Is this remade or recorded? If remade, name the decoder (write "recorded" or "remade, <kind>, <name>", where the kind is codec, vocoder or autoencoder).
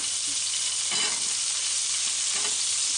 recorded